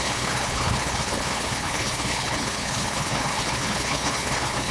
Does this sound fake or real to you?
fake